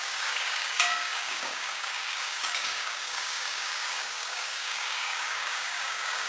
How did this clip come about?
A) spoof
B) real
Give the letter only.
A